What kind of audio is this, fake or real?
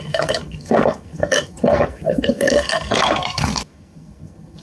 fake